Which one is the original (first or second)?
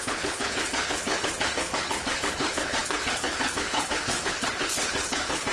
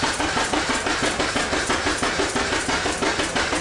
second